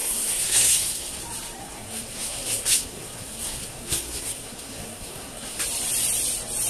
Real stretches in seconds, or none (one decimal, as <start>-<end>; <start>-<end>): 1.2-1.6; 5.6-6.7